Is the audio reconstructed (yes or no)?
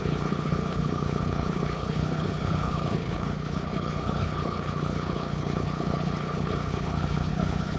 yes